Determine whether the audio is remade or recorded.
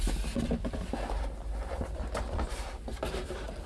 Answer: recorded